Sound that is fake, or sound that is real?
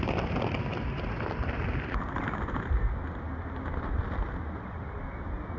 real